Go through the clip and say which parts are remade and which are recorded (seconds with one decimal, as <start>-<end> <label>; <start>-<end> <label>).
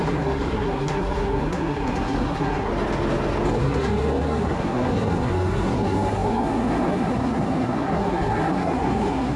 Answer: 0.0-2.7 remade; 2.7-3.5 recorded; 3.5-9.4 remade